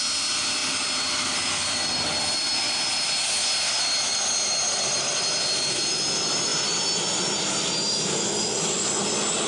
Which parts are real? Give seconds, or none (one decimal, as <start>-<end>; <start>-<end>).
0.0-9.5